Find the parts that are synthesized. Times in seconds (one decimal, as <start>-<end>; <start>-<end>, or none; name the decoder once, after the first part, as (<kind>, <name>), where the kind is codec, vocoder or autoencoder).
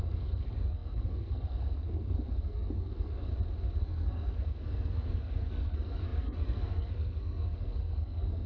0.0-3.3 (codec, SNAC); 3.8-8.5